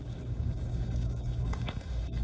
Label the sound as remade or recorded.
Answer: remade